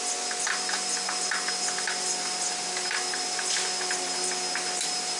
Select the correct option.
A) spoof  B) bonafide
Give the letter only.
B